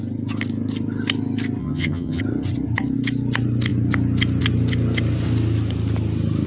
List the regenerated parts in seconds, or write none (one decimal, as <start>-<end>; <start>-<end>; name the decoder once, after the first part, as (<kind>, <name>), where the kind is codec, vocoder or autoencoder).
1.6-2.2 (vocoder, HiFi-GAN)